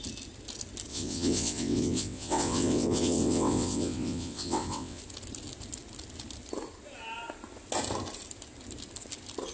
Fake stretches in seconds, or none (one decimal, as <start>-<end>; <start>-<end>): 0.9-5.0